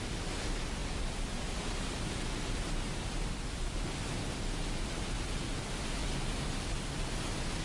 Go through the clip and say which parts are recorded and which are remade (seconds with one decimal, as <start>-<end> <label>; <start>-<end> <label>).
0.0-7.6 recorded